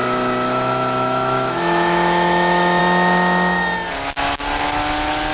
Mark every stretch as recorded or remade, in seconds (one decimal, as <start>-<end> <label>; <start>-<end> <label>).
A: 0.0-2.8 remade; 2.8-5.3 recorded